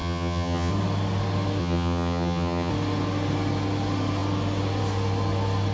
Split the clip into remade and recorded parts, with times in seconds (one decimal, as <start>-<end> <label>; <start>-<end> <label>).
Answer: 0.0-0.7 remade; 0.7-1.6 recorded; 1.6-2.7 remade; 2.7-5.7 recorded